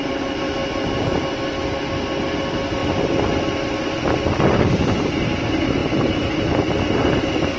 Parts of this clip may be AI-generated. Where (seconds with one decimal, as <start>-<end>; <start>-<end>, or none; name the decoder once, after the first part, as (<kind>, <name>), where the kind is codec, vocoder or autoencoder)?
none